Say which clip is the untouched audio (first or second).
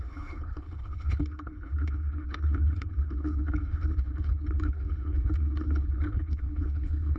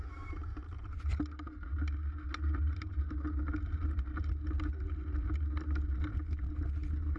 second